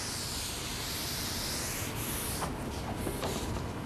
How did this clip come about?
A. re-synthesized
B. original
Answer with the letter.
B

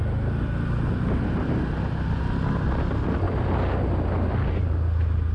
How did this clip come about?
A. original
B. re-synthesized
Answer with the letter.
A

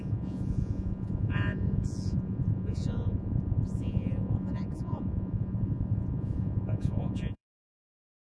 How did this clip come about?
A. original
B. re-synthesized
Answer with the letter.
B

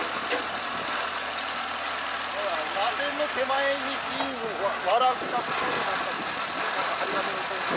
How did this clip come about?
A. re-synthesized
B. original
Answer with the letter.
B